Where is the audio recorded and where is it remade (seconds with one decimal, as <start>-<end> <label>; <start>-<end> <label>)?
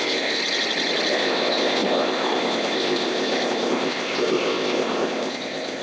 0.0-0.4 remade; 0.4-1.1 recorded; 1.1-5.8 remade